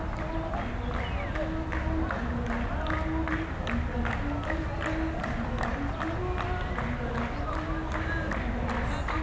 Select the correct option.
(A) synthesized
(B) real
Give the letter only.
B